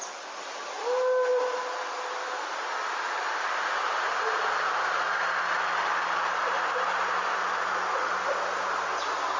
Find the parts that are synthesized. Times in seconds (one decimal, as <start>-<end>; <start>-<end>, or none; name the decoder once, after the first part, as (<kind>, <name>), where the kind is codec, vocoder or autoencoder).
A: none